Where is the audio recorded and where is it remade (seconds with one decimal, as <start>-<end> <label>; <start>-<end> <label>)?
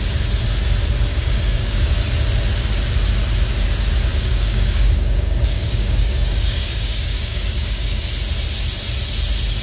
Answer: 0.0-1.1 recorded; 1.1-1.9 remade; 1.9-4.1 recorded; 4.1-8.0 remade; 8.0-9.6 recorded